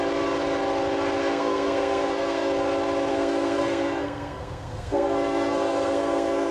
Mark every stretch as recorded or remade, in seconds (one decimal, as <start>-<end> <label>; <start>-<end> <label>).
0.0-1.2 recorded; 1.2-2.5 remade; 2.5-3.1 recorded; 3.1-6.5 remade